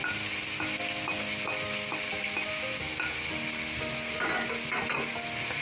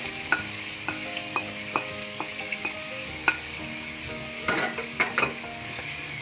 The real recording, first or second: first